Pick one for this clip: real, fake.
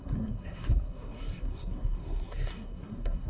fake